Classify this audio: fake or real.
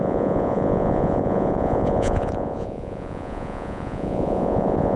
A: fake